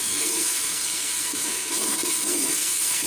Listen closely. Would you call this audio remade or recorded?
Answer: remade